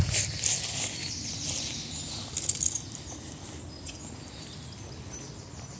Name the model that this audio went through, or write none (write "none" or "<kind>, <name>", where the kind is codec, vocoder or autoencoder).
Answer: none